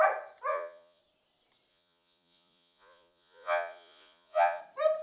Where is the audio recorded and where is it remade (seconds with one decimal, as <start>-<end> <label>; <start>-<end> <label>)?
0.0-0.5 recorded; 0.5-1.0 remade; 1.0-1.7 recorded; 1.7-4.6 remade; 4.6-5.0 recorded